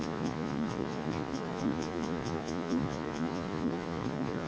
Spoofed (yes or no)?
yes